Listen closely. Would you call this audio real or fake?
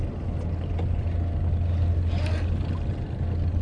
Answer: real